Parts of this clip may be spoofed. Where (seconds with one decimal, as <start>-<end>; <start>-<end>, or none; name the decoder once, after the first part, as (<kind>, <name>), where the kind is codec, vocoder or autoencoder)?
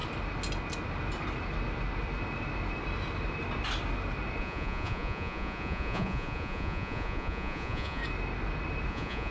4.4-8.0 (vocoder, Vocos); 8.9-9.3